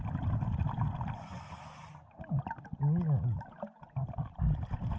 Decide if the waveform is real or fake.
real